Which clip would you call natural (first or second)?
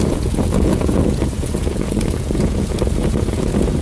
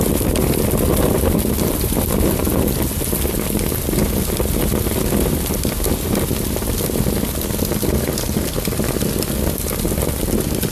second